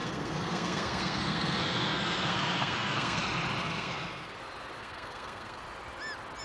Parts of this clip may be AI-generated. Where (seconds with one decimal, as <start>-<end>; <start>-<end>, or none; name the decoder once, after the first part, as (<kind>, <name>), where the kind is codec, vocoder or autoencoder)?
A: 0.0-3.2 (codec, SNAC); 3.6-4.3; 4.8-5.6